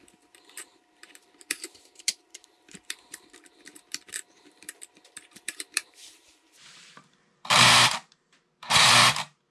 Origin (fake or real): fake